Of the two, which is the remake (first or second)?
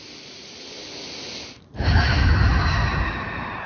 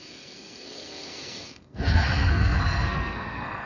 second